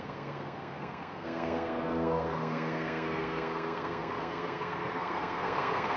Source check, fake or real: fake